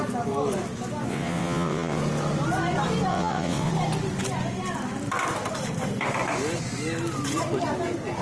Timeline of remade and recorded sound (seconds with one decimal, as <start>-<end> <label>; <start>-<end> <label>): 0.0-1.1 recorded; 1.1-2.0 remade; 2.0-3.1 recorded; 3.1-3.7 remade; 3.7-8.2 recorded